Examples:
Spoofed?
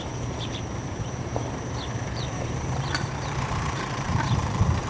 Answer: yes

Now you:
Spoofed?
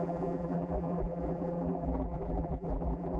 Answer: yes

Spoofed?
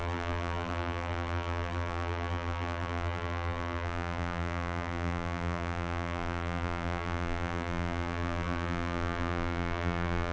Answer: yes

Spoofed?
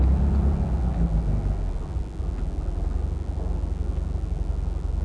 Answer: no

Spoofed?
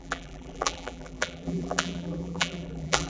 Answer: yes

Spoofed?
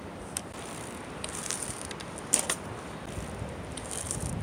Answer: yes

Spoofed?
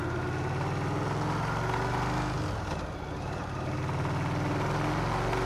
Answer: no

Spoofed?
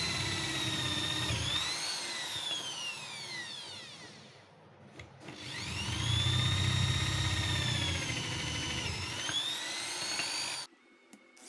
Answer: no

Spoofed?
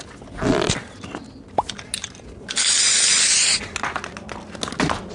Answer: no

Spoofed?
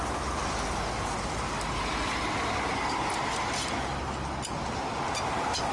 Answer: no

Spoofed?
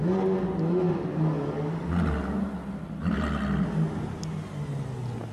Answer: no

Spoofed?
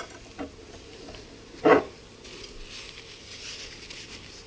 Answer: no